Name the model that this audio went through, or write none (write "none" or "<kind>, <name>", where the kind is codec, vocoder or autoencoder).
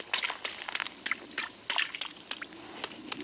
none